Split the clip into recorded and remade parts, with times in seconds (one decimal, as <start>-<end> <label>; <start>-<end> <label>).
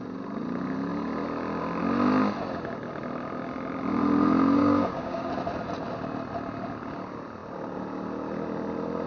0.0-4.6 recorded; 4.6-5.3 remade; 5.3-9.1 recorded